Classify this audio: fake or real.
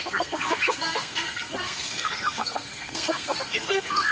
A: fake